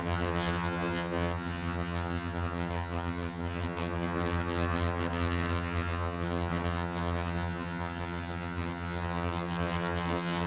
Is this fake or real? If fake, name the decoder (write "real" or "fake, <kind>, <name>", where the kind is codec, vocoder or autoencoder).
fake, vocoder, HiFi-GAN